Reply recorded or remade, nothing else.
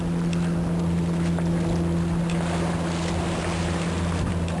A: recorded